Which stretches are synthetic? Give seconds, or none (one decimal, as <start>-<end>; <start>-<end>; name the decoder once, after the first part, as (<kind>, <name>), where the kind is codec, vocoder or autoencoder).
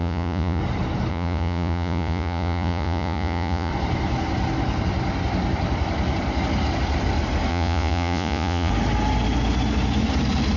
0.0-0.6 (vocoder, Vocos); 1.1-3.7; 7.5-8.7